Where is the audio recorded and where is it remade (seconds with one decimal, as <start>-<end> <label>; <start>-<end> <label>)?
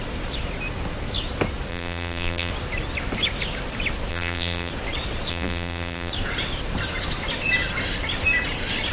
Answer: 0.0-1.7 recorded; 1.7-2.5 remade; 2.5-4.1 recorded; 4.1-4.7 remade; 4.7-5.3 recorded; 5.3-6.1 remade; 6.1-8.9 recorded